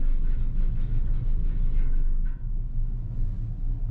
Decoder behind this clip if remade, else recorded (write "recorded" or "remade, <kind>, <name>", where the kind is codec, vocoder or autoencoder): recorded